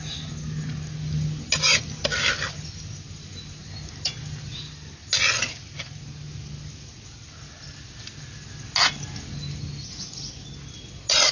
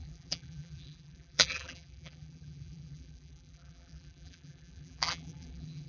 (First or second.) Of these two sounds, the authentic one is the first